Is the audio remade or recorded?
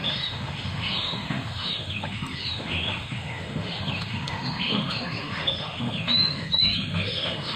remade